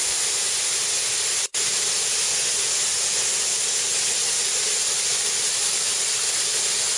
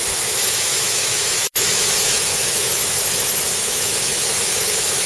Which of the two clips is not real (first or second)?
second